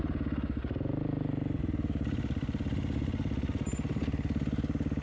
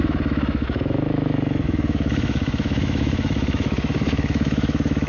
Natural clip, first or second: first